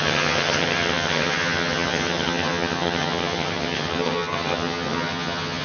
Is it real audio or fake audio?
fake